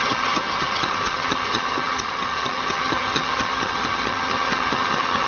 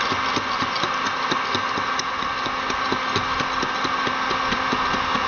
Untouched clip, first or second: second